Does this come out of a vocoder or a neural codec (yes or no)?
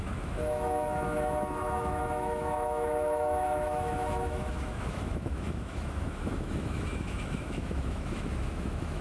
yes